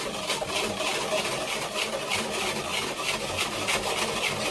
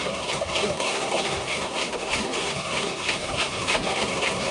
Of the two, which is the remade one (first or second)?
second